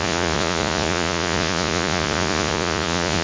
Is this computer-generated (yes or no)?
yes